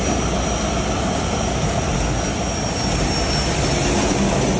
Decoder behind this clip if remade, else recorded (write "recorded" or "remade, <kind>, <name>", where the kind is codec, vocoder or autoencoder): recorded